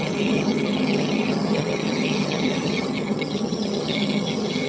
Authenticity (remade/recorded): remade